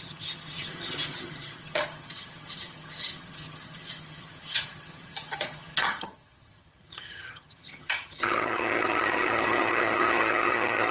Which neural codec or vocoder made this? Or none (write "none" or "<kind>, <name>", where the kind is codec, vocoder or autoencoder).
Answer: vocoder, HiFi-GAN